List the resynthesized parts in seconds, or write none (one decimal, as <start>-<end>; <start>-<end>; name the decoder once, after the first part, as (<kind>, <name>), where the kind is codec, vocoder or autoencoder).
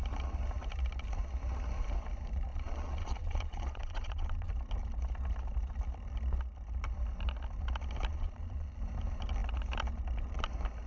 2.5-4.5 (vocoder, Vocos); 8.1-8.8